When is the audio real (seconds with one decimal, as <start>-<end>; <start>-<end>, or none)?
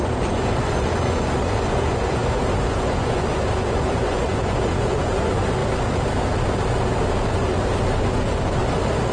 5.6-8.0; 8.6-9.1